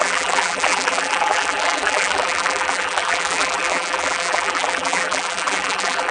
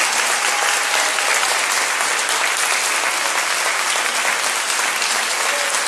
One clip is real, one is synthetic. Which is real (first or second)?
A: second